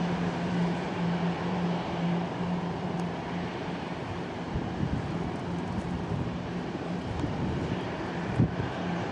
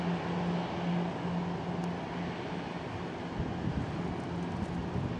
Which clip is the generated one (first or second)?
first